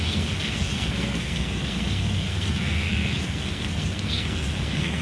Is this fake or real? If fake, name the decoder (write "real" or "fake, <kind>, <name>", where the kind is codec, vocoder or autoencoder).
fake, codec, SNAC